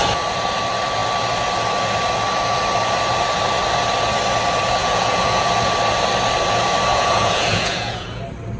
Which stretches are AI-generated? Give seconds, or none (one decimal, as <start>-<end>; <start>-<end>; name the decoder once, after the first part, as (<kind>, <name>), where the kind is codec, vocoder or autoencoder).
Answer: 4.8-5.5 (vocoder, Vocos); 6.9-8.2